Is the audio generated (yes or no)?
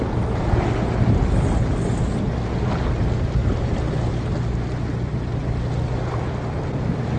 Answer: no